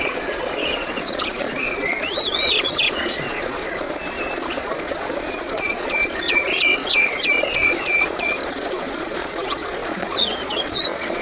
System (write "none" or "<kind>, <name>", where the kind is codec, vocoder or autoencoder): vocoder, Vocos